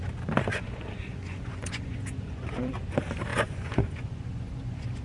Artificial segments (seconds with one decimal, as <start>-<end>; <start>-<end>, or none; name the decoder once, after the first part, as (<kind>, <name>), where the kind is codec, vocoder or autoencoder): 0.5-2.7 (vocoder, Vocos); 3.3-5.0